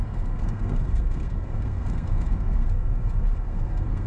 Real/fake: fake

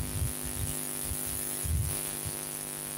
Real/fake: real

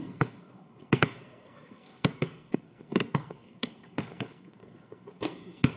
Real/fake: fake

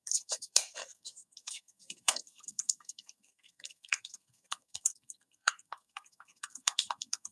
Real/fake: fake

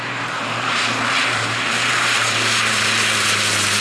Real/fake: fake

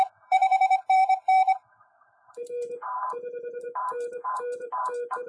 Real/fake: fake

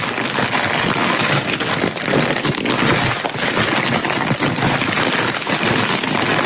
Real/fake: real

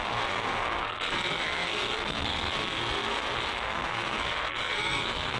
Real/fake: fake